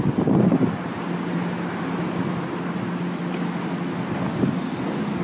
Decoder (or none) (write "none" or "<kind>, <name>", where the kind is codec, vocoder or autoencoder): none